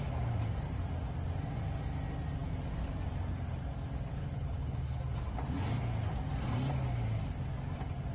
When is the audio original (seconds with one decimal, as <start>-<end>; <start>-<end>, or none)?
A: 0.0-4.1; 5.0-8.1